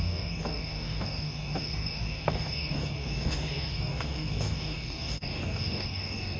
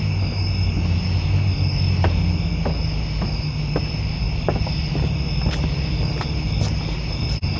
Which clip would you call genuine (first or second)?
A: second